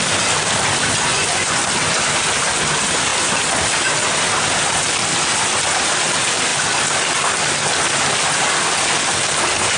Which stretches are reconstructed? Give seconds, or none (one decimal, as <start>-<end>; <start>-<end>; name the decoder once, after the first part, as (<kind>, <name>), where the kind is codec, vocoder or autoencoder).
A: 1.1-1.7 (vocoder, Vocos)